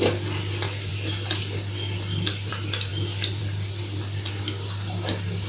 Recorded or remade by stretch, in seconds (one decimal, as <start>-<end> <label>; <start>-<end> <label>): 0.0-5.5 recorded